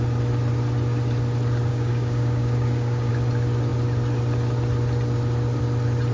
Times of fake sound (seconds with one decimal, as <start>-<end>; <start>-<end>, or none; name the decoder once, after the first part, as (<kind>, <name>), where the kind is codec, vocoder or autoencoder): 1.7-3.1 (codec, DAC)